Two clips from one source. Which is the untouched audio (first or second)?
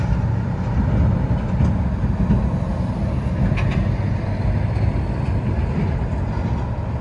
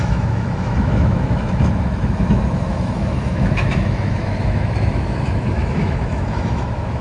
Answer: first